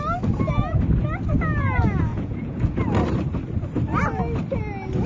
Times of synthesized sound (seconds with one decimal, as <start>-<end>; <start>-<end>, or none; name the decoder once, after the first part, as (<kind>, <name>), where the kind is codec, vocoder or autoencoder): 2.1-2.8 (vocoder, Vocos)